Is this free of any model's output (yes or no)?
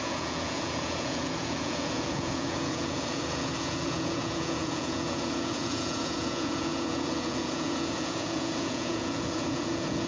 no